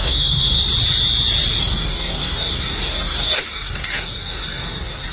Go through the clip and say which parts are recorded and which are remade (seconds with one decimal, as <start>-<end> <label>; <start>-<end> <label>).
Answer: 0.0-0.6 remade; 0.6-1.6 recorded; 1.6-5.1 remade